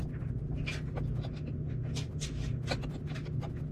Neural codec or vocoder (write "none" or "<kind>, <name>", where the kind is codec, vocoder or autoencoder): none